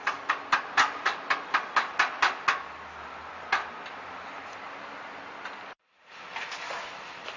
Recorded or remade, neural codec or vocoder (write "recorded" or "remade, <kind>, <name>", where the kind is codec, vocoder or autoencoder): recorded